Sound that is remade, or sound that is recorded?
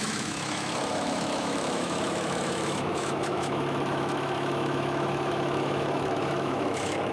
remade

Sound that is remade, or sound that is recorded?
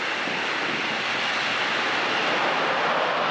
recorded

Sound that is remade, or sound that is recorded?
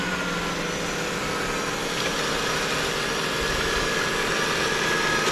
recorded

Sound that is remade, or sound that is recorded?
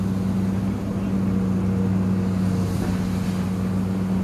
recorded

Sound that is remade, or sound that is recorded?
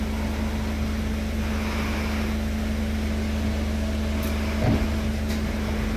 recorded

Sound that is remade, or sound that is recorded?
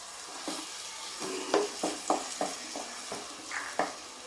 recorded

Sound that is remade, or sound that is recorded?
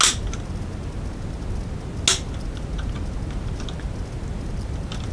recorded